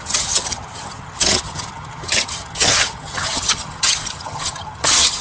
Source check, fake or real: fake